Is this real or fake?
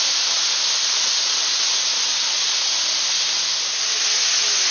real